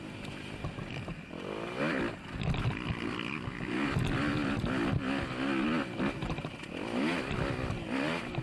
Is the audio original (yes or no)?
yes